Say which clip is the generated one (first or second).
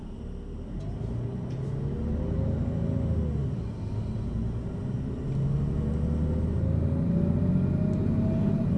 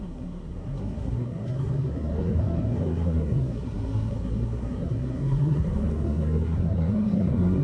second